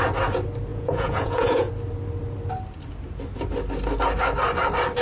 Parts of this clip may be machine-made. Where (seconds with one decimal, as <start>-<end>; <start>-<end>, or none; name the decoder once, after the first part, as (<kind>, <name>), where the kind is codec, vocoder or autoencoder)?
0.7-1.7 (vocoder, Vocos)